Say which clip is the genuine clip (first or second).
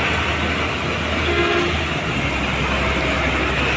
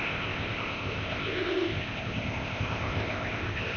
first